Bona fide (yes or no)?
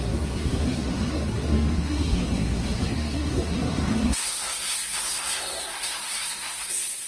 no